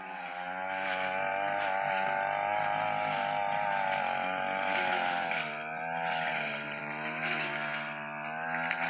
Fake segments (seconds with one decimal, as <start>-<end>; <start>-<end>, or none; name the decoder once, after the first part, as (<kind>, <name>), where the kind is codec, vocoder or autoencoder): none